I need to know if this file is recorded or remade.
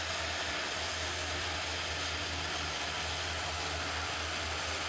recorded